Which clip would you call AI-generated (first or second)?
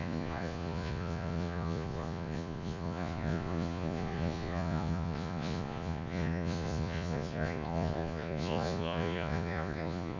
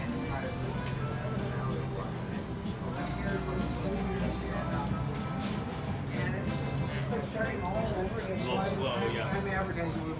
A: first